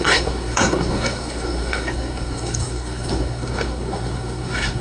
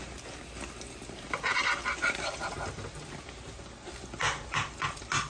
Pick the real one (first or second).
second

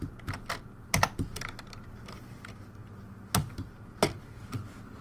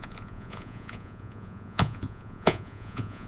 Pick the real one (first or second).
first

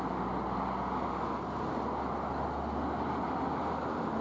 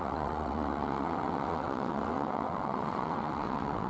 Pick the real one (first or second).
first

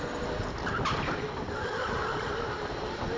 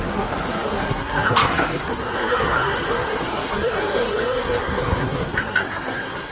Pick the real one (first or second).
first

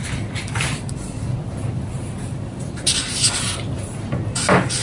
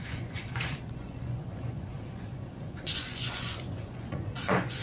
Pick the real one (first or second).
first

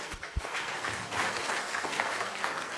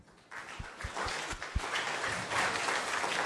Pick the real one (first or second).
second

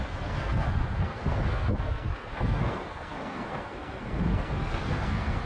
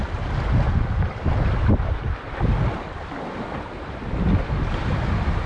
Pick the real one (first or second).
second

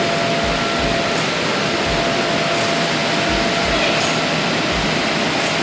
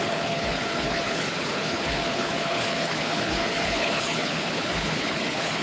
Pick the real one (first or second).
first